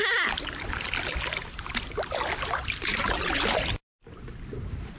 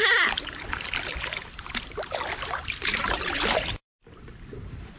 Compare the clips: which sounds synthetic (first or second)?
second